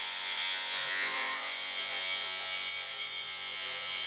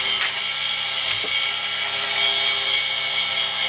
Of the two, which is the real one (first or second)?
second